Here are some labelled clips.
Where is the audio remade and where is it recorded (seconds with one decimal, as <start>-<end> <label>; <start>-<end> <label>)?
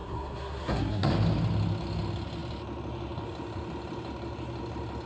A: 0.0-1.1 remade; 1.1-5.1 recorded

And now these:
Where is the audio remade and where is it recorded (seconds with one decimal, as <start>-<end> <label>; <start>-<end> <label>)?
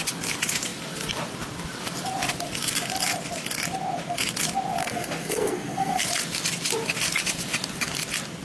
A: 0.0-4.8 recorded; 4.8-6.0 remade; 6.0-8.4 recorded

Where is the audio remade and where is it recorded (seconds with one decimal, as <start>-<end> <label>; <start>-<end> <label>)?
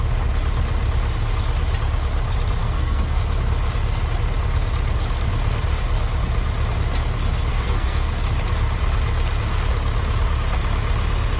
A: 0.0-2.6 recorded; 2.6-3.2 remade; 3.2-7.5 recorded; 7.5-8.1 remade; 8.1-11.4 recorded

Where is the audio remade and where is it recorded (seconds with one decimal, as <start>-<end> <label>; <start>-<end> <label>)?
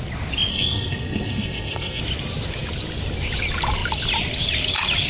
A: 0.0-0.5 recorded; 0.5-2.0 remade; 2.0-5.1 recorded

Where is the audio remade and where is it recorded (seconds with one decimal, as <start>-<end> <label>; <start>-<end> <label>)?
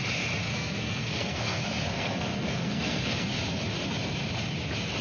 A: 0.0-0.4 recorded; 0.4-3.4 remade; 3.4-5.0 recorded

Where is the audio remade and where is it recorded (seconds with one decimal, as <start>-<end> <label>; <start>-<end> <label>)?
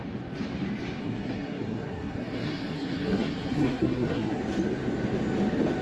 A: 0.0-1.0 recorded; 1.0-4.4 remade; 4.4-5.8 recorded